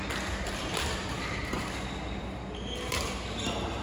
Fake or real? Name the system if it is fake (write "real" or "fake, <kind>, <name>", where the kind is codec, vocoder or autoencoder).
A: real